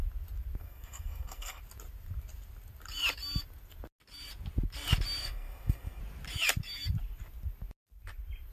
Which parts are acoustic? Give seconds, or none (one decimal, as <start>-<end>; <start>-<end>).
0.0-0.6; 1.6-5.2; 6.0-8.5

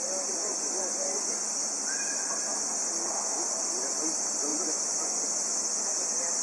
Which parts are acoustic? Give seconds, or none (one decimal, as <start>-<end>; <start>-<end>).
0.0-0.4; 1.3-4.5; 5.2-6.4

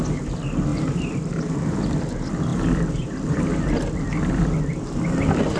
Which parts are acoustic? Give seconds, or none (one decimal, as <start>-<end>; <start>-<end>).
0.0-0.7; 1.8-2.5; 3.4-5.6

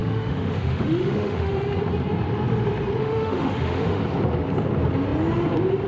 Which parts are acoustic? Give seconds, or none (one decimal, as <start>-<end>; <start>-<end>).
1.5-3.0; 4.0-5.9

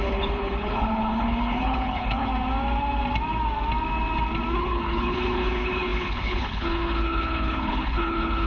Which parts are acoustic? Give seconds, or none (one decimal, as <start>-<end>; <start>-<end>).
2.3-4.6